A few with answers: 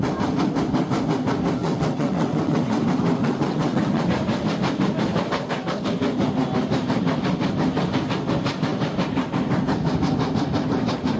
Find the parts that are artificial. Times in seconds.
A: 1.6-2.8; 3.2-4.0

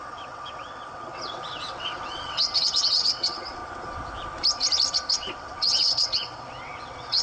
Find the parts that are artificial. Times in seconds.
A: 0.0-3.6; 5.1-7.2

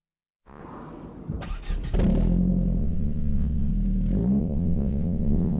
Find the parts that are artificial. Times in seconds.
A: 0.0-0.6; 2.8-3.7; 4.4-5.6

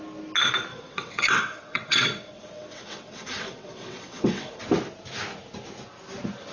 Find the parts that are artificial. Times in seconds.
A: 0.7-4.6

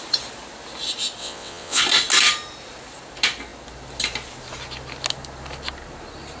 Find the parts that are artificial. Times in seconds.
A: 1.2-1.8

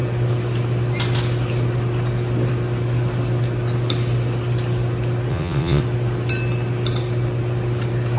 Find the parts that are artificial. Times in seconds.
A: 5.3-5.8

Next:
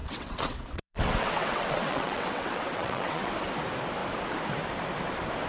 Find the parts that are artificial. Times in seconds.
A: 0.0-3.3

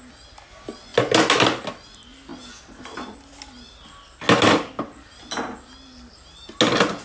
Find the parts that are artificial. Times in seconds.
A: none